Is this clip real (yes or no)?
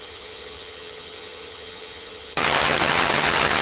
no